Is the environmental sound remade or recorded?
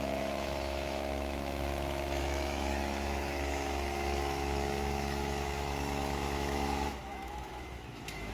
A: remade